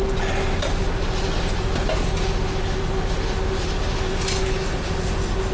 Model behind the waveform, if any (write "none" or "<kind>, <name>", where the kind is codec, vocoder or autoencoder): none